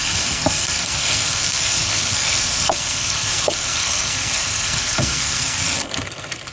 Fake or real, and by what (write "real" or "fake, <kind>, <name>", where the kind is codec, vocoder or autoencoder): fake, codec, SNAC